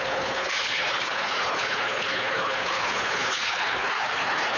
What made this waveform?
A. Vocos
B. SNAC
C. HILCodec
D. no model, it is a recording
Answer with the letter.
C